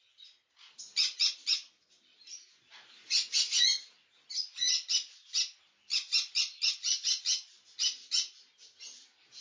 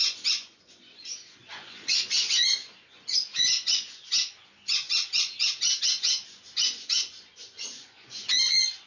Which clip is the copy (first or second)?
second